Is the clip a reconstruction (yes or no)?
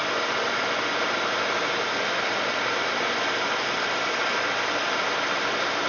no